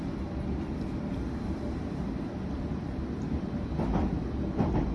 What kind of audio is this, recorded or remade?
remade